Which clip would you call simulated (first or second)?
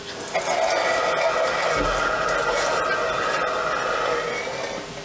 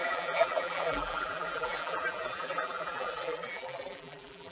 second